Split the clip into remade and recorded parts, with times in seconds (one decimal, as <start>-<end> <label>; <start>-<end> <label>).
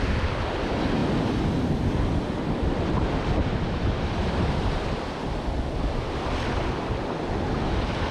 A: 0.0-1.0 recorded; 1.0-5.1 remade; 5.1-8.1 recorded